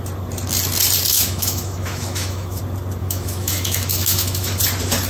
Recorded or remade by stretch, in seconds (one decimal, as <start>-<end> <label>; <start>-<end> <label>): 0.0-1.1 recorded; 1.1-2.6 remade; 2.6-3.0 recorded; 3.0-4.6 remade; 4.6-5.1 recorded